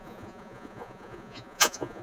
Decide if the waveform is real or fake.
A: fake